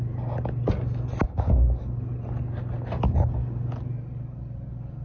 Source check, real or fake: real